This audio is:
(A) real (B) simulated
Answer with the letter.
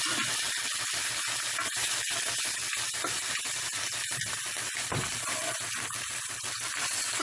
A